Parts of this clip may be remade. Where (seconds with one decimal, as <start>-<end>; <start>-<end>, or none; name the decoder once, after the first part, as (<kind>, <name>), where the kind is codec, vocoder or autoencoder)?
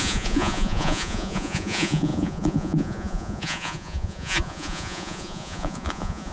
0.0-6.3 (vocoder, Vocos)